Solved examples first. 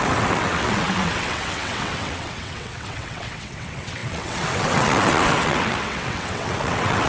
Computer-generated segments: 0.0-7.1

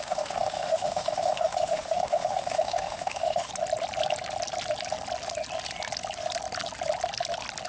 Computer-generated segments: 0.0-3.5

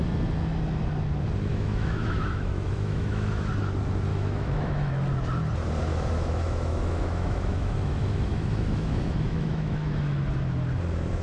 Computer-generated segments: 1.5-3.5; 4.1-4.9; 5.9-10.2

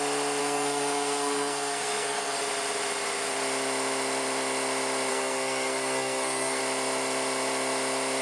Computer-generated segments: 0.4-2.4; 5.1-6.6